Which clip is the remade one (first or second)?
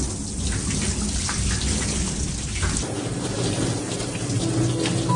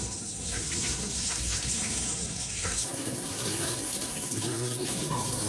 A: second